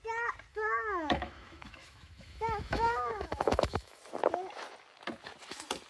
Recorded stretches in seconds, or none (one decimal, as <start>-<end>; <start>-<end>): 0.0-0.5; 4.0-5.9